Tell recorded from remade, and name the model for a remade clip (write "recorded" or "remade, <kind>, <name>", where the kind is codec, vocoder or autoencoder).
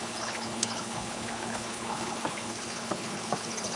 remade, codec, HILCodec